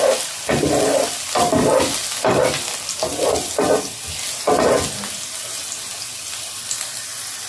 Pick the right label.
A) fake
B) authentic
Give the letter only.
B